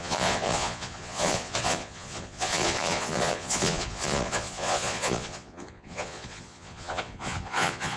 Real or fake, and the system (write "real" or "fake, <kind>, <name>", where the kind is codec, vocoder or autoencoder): fake, vocoder, Vocos